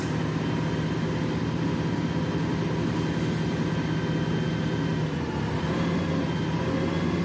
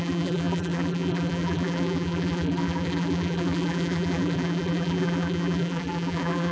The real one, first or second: first